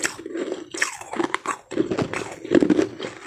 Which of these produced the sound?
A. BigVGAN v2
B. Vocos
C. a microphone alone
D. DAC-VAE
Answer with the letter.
C